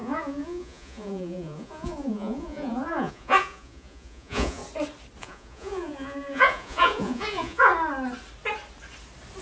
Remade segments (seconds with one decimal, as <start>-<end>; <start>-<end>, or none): 0.0-4.6; 5.2-7.7